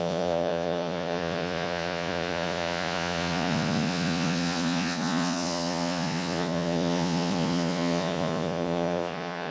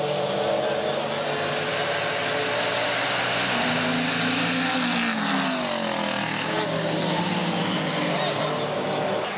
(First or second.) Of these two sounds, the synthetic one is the first